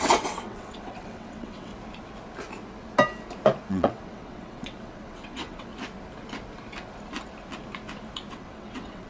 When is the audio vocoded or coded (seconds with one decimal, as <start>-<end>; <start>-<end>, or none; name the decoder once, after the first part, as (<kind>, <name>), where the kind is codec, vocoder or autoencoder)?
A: 0.0-1.7 (vocoder, WaveNeXt); 3.7-5.7; 8.3-9.1